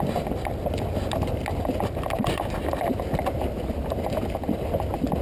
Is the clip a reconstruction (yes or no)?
no